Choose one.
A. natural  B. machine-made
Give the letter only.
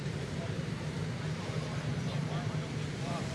B